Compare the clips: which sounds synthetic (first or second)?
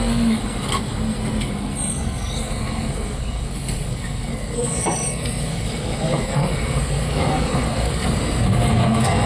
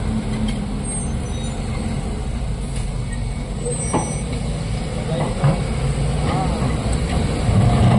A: first